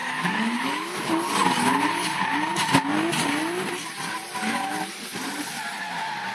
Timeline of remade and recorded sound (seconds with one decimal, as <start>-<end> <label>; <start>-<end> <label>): 0.0-1.1 remade; 1.1-6.3 recorded